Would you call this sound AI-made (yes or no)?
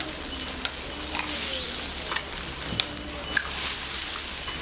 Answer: no